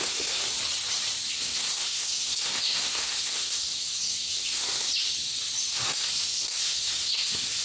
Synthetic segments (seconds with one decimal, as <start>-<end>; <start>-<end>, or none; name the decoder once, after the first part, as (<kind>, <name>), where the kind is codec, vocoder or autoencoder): 0.0-0.4 (codec, SNAC); 1.3-4.9; 5.7-7.6